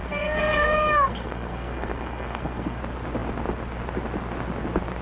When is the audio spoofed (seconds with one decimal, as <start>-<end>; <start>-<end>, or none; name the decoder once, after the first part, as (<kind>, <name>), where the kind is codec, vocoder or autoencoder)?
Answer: 0.0-2.8 (codec, SNAC)